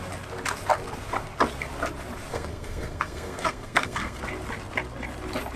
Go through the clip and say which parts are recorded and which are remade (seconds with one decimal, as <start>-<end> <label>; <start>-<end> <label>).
0.0-2.3 recorded; 2.3-4.2 remade; 4.2-5.6 recorded